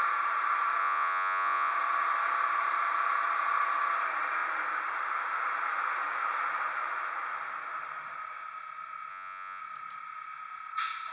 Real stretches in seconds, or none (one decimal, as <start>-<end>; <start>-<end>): 0.0-0.8; 1.7-9.1; 9.6-11.1